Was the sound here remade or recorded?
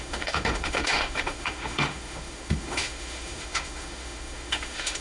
remade